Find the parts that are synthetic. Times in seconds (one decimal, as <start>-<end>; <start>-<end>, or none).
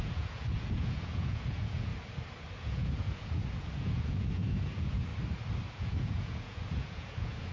0.0-1.9; 2.6-5.1; 5.7-7.5